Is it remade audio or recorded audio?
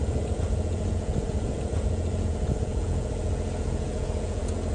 remade